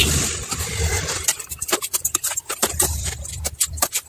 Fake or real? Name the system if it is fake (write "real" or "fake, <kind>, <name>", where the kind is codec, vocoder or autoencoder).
fake, vocoder, BigVGAN v2